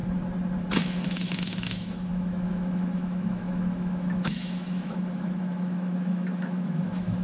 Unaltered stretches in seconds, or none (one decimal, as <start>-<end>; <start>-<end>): 0.0-0.8